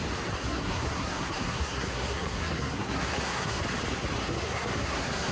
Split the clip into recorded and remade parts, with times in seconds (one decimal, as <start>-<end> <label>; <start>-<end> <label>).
0.0-0.4 recorded; 0.4-3.6 remade; 3.6-4.2 recorded; 4.2-5.3 remade